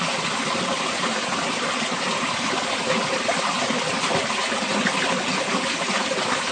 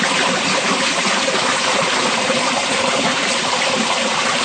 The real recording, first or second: first